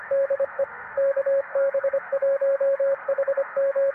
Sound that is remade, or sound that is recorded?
remade